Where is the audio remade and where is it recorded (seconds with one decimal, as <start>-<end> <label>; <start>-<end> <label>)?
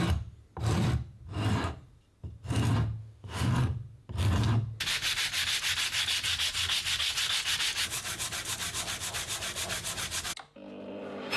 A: 0.0-3.0 recorded; 3.0-3.5 remade; 3.5-11.4 recorded